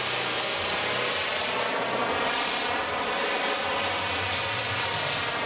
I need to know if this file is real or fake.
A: real